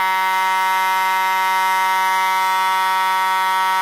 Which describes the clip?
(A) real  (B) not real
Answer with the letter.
A